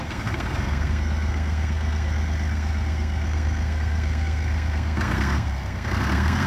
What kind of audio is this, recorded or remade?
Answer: remade